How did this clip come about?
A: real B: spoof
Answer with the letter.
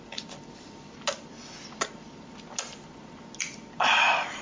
A